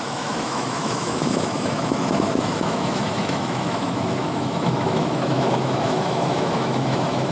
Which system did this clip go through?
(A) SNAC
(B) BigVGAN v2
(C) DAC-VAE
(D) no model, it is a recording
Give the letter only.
C